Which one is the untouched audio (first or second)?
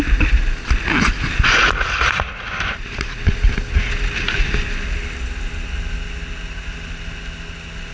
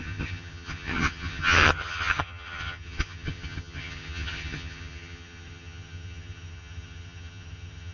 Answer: first